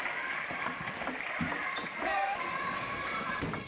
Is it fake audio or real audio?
fake